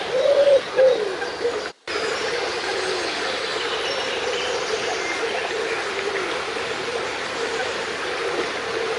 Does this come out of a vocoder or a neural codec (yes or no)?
no